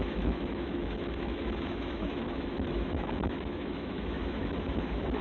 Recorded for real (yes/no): no